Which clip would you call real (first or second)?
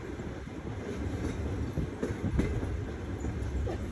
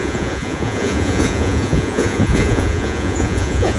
first